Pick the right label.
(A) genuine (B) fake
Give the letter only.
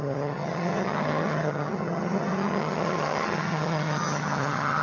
B